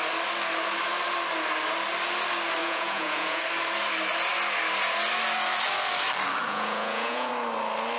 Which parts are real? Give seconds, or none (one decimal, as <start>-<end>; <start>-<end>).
0.0-2.6; 3.4-6.4; 7.3-8.0